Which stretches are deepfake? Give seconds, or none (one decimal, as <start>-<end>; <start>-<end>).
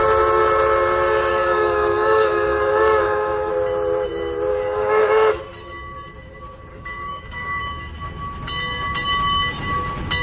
1.3-3.5; 4.5-5.4; 6.7-7.6